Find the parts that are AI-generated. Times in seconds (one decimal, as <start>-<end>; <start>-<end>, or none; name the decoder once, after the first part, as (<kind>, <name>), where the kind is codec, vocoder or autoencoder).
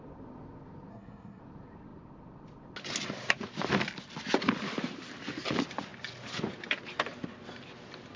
0.9-1.4 (codec, SNAC)